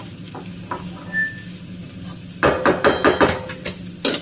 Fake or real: real